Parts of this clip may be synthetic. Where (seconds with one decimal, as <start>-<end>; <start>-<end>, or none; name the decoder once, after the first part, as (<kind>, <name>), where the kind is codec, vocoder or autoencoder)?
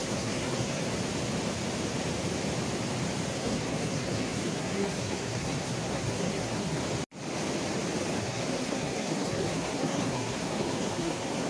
0.0-0.8 (codec, SNAC); 3.3-6.8; 8.2-11.5